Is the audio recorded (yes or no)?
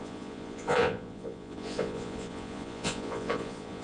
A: no